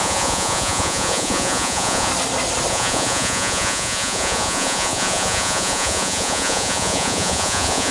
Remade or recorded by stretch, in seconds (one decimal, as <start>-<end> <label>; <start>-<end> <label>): 0.0-2.1 remade; 2.1-2.7 recorded; 2.7-7.9 remade